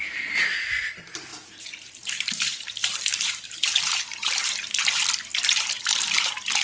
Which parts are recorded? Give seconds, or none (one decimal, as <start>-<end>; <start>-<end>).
4.8-5.8